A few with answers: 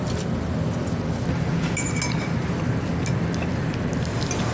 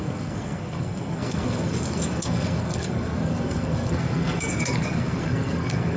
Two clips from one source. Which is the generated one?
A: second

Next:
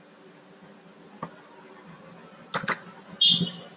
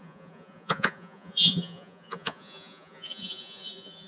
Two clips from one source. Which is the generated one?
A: second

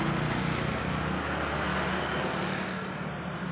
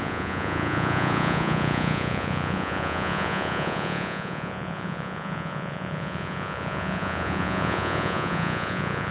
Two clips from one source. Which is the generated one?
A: second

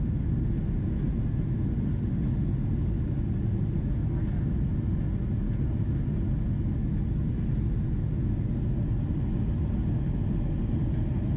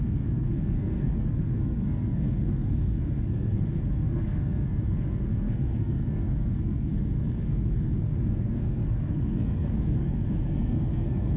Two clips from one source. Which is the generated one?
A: second